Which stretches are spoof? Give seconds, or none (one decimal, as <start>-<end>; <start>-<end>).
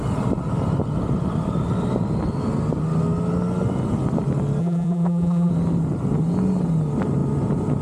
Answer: 4.6-5.5